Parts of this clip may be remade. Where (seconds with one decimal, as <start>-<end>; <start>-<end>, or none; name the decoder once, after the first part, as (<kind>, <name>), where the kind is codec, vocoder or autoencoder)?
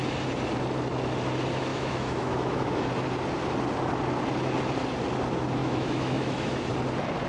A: 1.7-2.9 (autoencoder, DAC-VAE); 5.6-6.7